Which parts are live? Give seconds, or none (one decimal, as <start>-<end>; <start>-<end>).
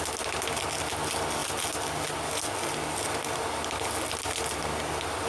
0.0-5.3